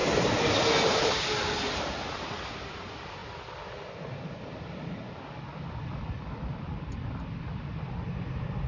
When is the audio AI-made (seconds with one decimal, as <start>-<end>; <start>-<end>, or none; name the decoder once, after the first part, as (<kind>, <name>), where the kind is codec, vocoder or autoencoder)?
none